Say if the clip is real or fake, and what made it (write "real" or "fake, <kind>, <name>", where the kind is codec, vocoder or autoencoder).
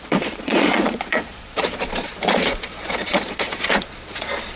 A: fake, vocoder, Vocos